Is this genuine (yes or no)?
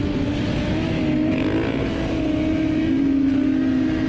yes